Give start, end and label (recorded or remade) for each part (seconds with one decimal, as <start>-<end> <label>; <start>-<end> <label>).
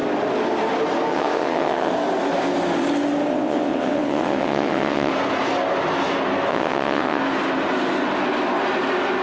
0.0-1.1 recorded; 1.1-1.9 remade; 1.9-3.3 recorded; 3.3-5.1 remade; 5.1-6.5 recorded; 6.5-7.2 remade; 7.2-9.2 recorded